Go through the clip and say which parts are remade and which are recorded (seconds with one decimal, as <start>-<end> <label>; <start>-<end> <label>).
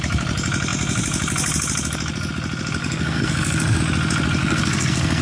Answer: 0.0-2.8 recorded; 2.8-3.8 remade; 3.8-4.4 recorded; 4.4-5.2 remade